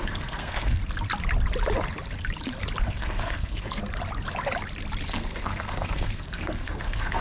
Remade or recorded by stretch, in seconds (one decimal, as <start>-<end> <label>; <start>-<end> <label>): 0.0-0.8 remade; 0.8-2.8 recorded; 2.8-3.8 remade; 3.8-5.1 recorded; 5.1-7.2 remade